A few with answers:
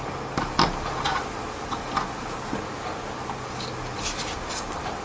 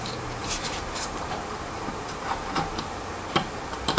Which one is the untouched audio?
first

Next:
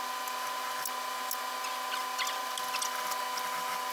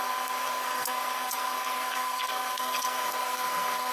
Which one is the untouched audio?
first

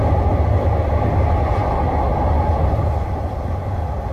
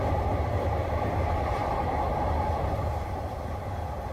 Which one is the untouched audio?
first